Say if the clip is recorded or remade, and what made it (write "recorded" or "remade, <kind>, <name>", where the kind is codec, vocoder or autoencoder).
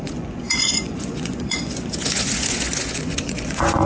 remade, vocoder, Vocos